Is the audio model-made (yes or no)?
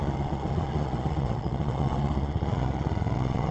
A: yes